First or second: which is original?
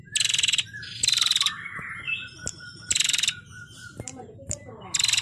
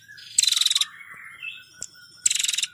second